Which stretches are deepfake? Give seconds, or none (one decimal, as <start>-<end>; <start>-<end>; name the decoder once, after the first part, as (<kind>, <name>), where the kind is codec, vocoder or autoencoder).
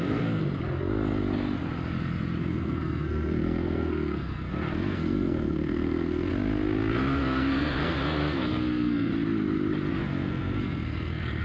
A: 0.0-0.4 (codec, SNAC); 2.4-6.3; 6.9-9.1; 9.9-11.4